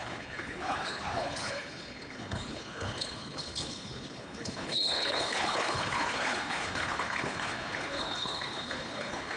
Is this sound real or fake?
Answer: fake